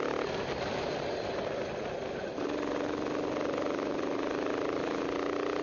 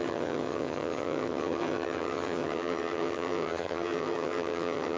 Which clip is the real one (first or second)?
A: first